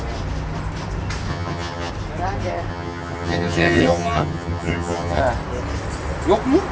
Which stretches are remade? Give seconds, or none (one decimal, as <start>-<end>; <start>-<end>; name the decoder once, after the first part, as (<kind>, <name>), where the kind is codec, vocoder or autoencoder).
1.3-1.9 (vocoder, HiFi-GAN); 2.7-5.2